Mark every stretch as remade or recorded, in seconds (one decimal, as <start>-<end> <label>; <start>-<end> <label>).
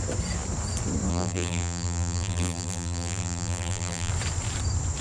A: 0.0-1.1 recorded; 1.1-4.1 remade; 4.1-5.0 recorded